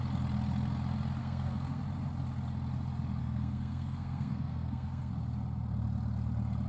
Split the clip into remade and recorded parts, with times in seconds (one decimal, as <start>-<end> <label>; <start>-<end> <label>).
0.0-1.2 recorded; 1.2-1.8 remade; 1.8-3.2 recorded; 3.2-5.1 remade; 5.1-6.7 recorded